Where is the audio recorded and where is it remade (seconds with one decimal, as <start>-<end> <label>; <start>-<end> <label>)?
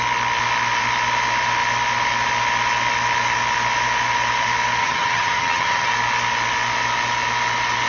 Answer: 0.0-4.8 recorded; 4.8-5.9 remade; 5.9-7.9 recorded